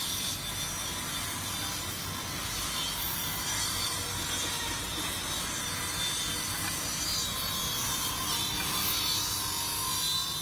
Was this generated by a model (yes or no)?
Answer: no